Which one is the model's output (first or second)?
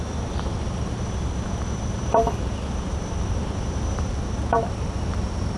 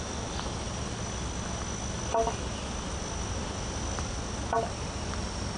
first